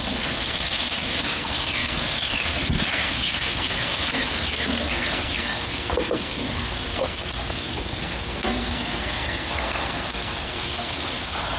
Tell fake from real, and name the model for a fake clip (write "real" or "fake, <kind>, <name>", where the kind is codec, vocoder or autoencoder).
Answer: fake, codec, SNAC